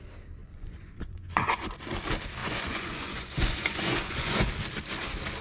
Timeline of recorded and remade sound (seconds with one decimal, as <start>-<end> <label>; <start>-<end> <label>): 0.0-0.4 recorded; 0.4-1.7 remade; 1.7-2.4 recorded; 2.4-4.5 remade; 4.5-5.4 recorded